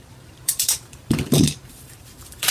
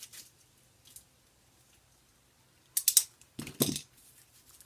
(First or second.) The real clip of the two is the second